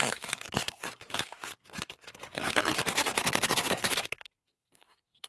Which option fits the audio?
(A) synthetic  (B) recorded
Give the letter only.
A